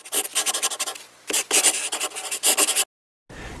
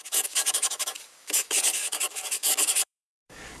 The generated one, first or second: second